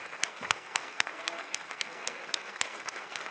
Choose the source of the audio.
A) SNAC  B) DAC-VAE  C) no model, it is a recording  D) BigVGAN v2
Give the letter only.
A